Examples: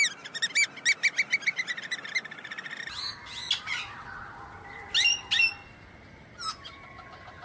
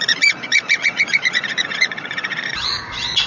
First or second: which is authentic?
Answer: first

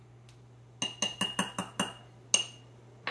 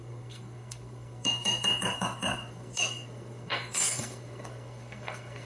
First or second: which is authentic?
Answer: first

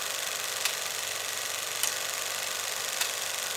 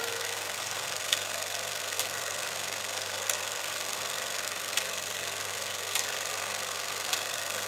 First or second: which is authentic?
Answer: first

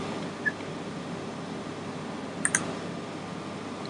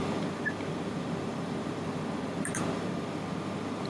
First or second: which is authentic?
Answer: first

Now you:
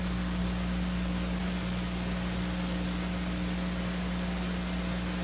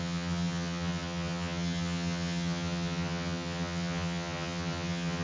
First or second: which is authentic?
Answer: first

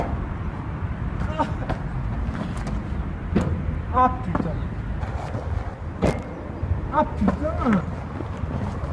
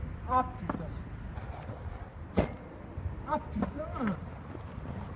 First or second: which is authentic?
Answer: first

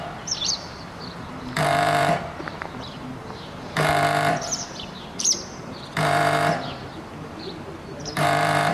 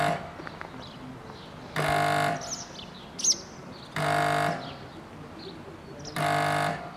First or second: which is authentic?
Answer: second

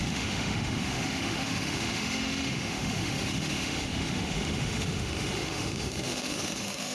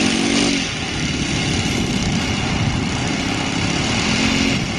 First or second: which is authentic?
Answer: second